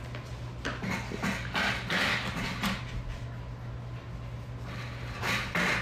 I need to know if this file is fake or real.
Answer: real